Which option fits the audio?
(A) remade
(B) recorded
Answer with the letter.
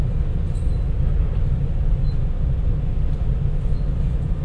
B